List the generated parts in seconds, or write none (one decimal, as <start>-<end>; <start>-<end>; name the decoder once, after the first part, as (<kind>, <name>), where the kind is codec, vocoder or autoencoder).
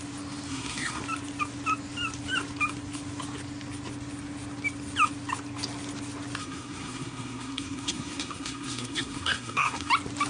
0.5-1.0 (codec, SNAC); 6.4-9.9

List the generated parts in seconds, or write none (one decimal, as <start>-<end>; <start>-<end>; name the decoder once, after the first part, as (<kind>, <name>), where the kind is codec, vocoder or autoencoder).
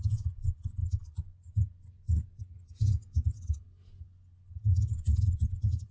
none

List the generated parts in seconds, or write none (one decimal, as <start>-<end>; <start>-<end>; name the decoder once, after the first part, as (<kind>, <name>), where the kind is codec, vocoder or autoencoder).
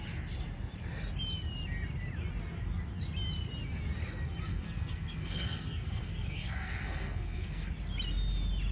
4.5-7.7 (codec, SNAC)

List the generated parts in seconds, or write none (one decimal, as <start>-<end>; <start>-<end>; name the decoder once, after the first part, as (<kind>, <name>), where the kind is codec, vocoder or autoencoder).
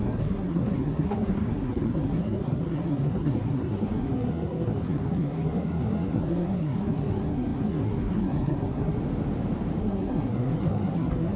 0.0-9.0 (codec, SNAC); 9.8-11.4